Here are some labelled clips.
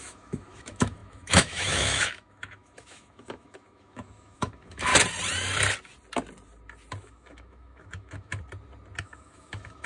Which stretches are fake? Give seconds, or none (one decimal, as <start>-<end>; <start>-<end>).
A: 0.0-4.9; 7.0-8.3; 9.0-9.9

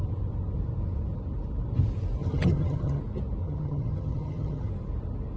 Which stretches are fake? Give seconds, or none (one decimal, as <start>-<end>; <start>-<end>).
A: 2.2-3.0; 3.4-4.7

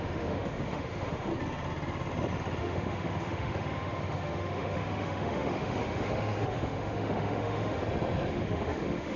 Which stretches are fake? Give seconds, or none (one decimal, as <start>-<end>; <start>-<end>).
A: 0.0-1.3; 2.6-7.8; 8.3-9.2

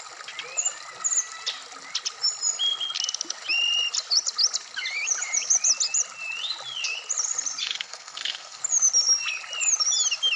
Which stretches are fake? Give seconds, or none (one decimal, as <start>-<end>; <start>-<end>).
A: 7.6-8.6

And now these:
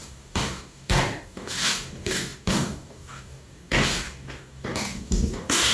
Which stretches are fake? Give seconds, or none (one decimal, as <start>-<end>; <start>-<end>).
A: 0.0-5.7

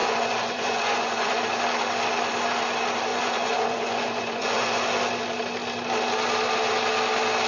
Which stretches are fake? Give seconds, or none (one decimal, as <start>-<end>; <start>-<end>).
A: 0.0-1.4; 3.1-4.8

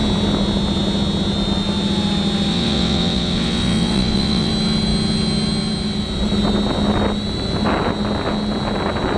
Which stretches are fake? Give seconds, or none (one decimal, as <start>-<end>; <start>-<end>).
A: 2.5-4.5